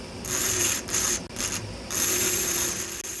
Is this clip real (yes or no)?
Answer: yes